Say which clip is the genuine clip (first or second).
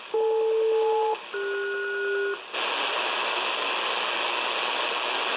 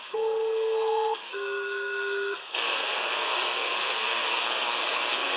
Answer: first